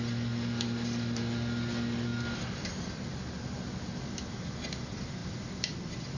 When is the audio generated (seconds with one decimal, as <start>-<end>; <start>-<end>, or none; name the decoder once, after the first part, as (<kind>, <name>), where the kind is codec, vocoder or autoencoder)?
none

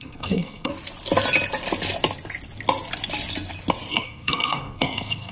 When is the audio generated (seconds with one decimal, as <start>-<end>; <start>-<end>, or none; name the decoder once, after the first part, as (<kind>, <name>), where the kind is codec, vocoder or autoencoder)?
0.0-0.7 (codec, SNAC); 3.9-5.3

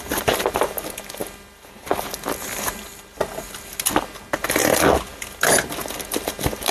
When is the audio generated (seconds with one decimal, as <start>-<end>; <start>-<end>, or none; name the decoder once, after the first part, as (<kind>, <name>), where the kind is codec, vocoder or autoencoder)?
none

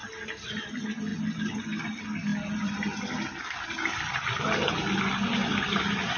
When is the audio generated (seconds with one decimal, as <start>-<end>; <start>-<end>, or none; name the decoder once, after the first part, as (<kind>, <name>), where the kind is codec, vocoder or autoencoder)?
none